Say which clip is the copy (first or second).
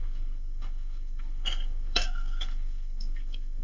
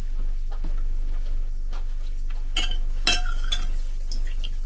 first